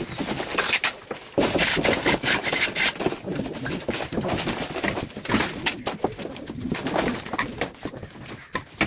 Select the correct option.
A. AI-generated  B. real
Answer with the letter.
B